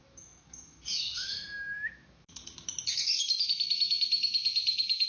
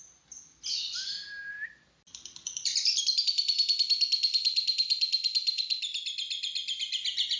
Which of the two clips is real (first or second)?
second